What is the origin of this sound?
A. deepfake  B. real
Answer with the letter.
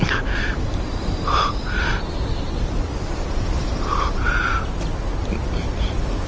B